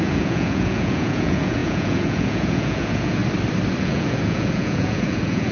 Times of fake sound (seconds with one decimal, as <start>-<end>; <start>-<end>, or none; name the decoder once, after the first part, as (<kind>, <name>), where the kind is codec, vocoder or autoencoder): 0.0-3.2 (vocoder, Vocos); 3.8-5.5